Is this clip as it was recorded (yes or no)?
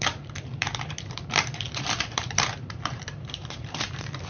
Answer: no